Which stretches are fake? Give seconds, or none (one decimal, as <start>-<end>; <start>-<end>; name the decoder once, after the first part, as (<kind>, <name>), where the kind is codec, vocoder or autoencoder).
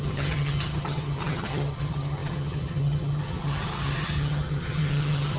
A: 0.0-5.4 (vocoder, HiFi-GAN)